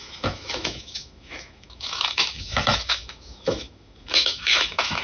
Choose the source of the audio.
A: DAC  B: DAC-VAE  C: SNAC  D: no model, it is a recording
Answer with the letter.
B